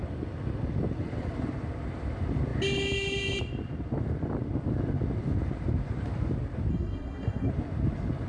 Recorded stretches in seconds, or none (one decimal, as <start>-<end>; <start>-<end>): 0.0-6.7; 7.5-8.3